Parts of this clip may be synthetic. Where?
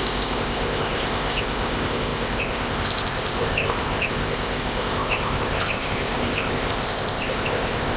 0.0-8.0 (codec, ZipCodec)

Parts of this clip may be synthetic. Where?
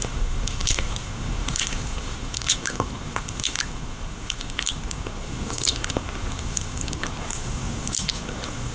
0.0-8.7 (codec, SNAC)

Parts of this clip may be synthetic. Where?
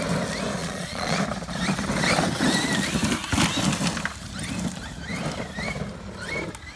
0.6-1.2 (vocoder, Vocos)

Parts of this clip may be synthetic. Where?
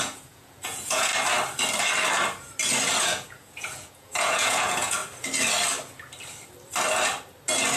0.0-1.1 (vocoder, Vocos); 3.0-5.0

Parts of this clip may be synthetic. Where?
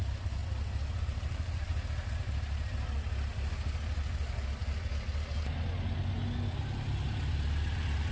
0.0-0.4 (vocoder, BigVGAN v2); 1.0-1.7; 6.6-8.1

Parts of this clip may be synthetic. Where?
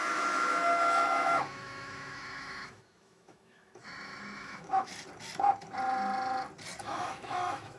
0.0-4.9 (autoencoder, DAC-VAE); 6.8-7.8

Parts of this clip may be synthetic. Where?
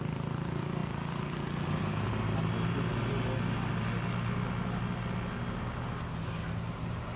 none